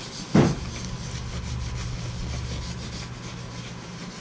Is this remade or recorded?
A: recorded